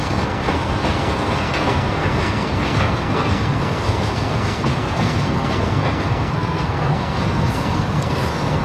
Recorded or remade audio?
remade